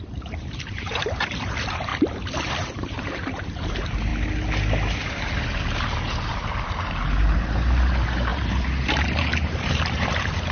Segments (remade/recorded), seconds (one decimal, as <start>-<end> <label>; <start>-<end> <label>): 0.0-4.1 remade; 4.1-6.6 recorded; 6.6-10.5 remade